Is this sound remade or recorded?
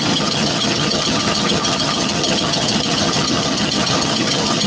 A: remade